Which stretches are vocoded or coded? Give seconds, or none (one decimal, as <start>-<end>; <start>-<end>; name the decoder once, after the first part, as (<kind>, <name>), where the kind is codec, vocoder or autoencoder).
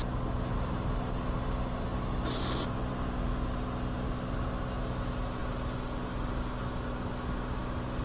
none